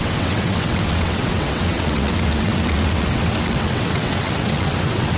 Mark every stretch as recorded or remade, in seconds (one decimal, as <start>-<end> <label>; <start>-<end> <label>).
0.0-5.2 remade